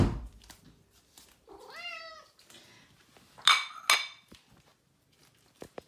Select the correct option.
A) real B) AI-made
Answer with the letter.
A